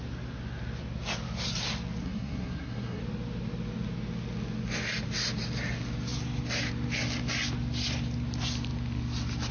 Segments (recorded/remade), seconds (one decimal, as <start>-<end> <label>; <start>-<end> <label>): 0.0-2.0 recorded; 2.0-3.0 remade; 3.0-9.5 recorded